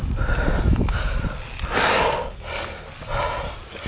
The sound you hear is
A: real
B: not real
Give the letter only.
A